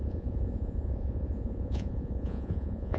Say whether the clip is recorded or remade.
remade